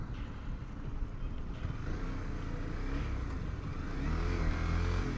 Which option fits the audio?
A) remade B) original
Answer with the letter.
B